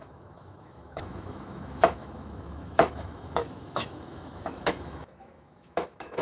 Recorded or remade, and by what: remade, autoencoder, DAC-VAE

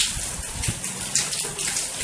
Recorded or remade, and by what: recorded